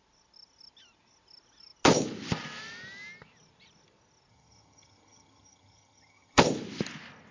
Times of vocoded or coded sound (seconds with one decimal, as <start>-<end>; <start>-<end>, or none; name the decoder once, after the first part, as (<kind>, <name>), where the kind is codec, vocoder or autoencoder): 4.3-6.4 (vocoder, HiFi-GAN)